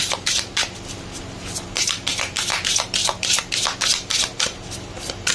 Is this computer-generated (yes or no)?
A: yes